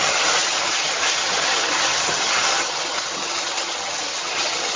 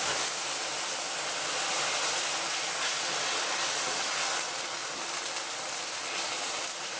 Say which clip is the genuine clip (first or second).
second